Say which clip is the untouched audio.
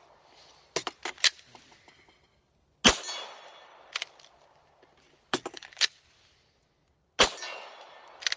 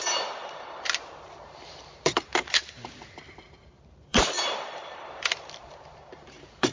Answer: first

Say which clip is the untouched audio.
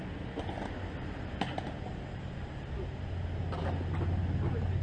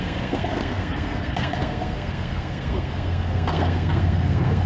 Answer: first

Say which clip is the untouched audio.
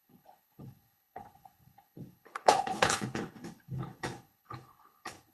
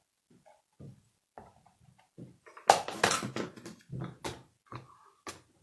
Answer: second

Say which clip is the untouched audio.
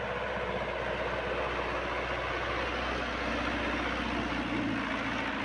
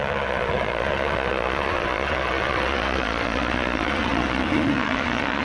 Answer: first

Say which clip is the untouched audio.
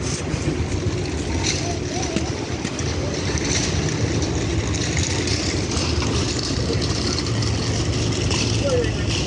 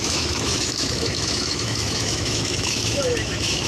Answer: first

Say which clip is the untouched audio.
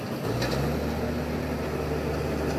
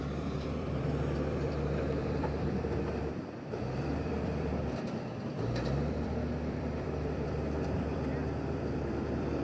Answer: first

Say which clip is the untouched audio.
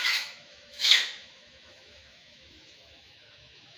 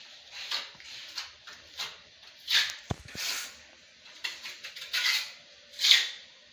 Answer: second